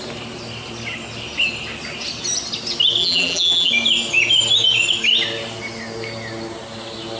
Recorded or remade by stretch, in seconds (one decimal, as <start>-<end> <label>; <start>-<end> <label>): 0.0-3.0 recorded; 3.0-3.7 remade; 3.7-7.2 recorded